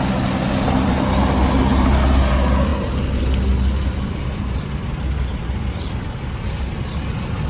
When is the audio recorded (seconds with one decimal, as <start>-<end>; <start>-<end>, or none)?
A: 0.0-7.5